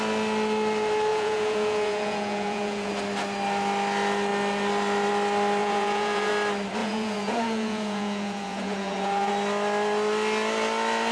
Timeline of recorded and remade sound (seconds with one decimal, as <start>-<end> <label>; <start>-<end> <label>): 0.0-1.1 recorded; 1.1-2.9 remade; 2.9-5.6 recorded; 5.6-6.3 remade; 6.3-6.8 recorded; 6.8-9.3 remade; 9.3-11.1 recorded